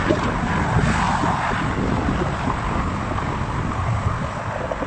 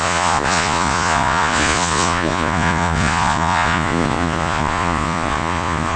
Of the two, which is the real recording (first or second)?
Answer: first